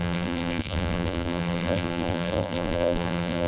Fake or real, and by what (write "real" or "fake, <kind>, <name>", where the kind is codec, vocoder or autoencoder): fake, vocoder, BigVGAN v2